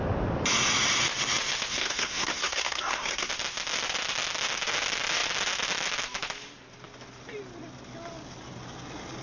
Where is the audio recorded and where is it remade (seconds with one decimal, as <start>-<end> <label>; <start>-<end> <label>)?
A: 0.0-1.7 recorded; 1.7-3.3 remade; 3.3-9.2 recorded